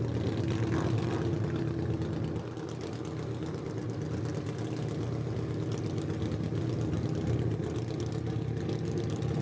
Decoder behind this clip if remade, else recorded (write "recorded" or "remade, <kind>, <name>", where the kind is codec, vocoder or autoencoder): recorded